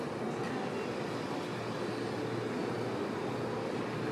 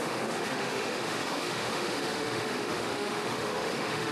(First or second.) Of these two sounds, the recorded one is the first